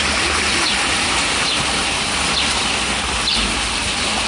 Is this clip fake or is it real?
real